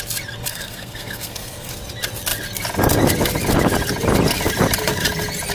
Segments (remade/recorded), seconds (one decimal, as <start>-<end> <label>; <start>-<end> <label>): 0.0-0.5 recorded; 0.5-1.7 remade; 1.7-5.5 recorded